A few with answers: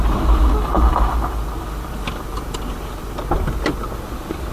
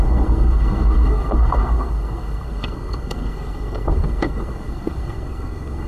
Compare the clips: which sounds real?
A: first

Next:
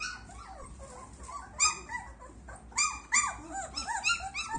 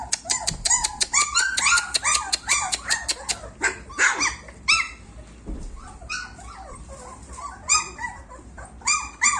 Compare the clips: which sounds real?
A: first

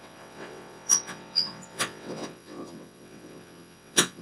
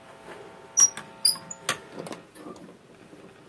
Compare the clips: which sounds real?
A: second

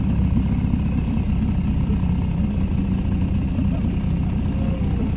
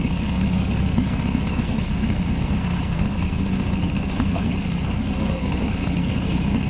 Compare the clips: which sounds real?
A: first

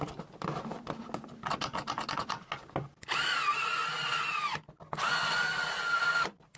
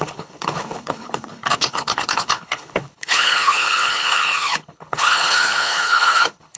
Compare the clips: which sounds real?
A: first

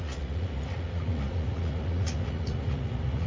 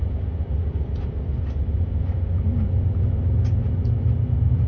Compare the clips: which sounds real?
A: second